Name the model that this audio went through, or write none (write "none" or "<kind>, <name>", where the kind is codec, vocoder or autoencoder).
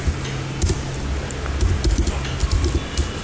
none